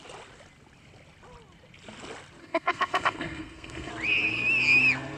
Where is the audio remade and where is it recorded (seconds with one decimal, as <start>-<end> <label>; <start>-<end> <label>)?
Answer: 0.0-2.4 recorded; 2.4-3.9 remade; 3.9-5.2 recorded